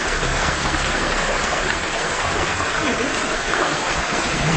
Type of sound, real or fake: fake